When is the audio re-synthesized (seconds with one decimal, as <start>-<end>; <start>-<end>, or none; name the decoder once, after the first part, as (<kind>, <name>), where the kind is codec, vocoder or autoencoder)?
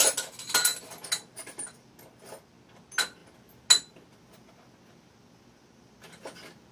none